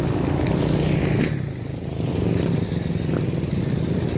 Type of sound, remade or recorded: recorded